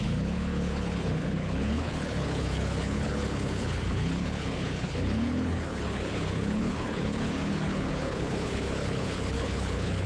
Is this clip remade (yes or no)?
yes